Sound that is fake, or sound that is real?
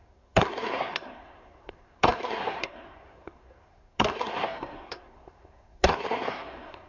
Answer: fake